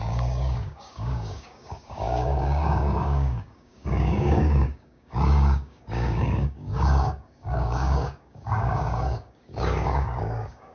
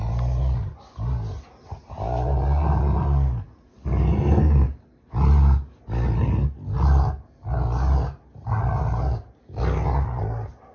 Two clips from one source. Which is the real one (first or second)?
second